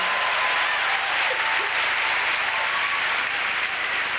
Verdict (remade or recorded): recorded